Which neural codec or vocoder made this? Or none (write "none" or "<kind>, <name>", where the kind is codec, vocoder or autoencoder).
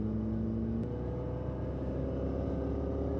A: none